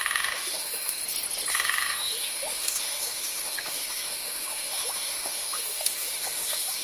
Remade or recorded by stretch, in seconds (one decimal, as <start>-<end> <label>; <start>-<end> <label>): 0.0-1.0 remade; 1.0-1.5 recorded; 1.5-6.8 remade